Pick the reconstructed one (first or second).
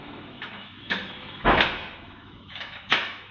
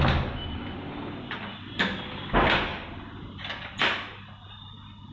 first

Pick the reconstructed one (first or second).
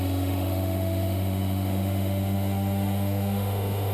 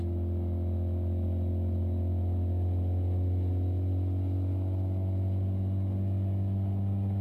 first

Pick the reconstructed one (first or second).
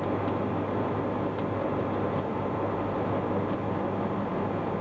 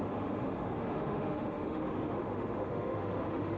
second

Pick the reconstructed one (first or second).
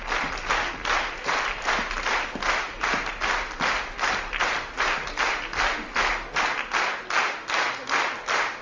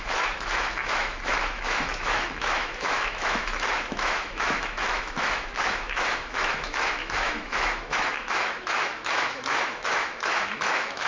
second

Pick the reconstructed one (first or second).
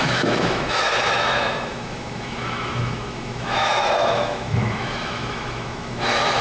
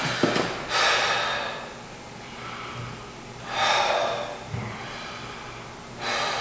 first